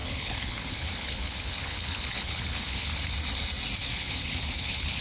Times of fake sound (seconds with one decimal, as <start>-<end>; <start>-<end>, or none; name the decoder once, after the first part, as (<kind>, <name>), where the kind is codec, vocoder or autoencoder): 0.0-3.0 (codec, HILCodec); 3.9-5.0